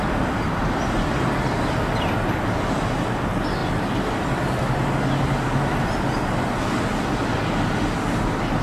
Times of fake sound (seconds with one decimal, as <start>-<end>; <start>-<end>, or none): none